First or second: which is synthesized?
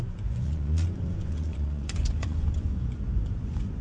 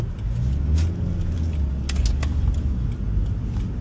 first